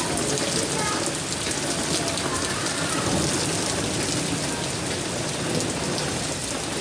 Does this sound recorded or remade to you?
recorded